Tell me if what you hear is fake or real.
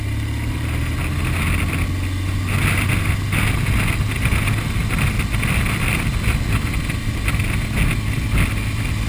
real